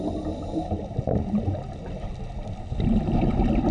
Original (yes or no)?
yes